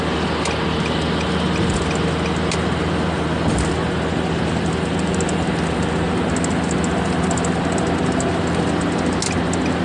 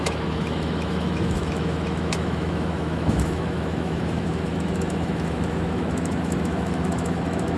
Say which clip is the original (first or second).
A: first